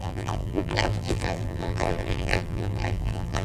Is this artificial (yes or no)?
yes